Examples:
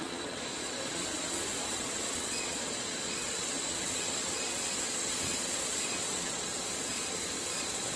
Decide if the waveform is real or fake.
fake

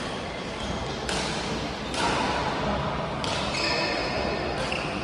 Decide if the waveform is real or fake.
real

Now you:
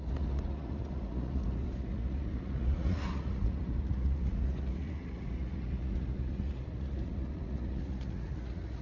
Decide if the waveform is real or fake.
fake